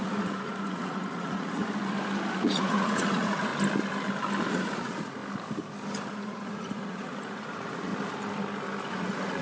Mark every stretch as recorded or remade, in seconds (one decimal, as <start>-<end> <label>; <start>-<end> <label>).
0.0-1.6 remade; 1.6-2.3 recorded; 2.3-3.5 remade; 3.5-4.5 recorded; 4.5-5.2 remade; 5.2-6.1 recorded; 6.1-7.9 remade; 7.9-8.9 recorded; 8.9-9.4 remade